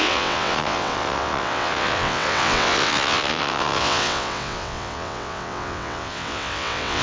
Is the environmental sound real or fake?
fake